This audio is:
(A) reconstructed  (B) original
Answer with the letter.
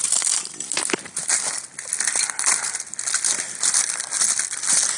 B